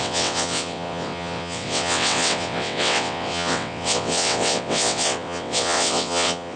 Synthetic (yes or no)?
yes